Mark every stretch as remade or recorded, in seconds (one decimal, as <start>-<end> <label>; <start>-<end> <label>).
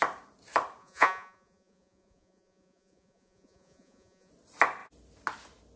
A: 0.0-0.8 recorded; 0.8-4.3 remade; 4.3-5.8 recorded